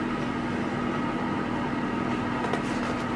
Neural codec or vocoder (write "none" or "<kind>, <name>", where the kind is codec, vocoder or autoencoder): none